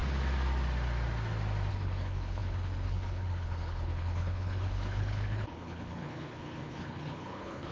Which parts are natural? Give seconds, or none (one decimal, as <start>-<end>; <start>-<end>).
0.0-1.7